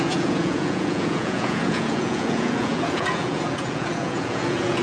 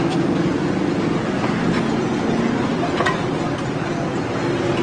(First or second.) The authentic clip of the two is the second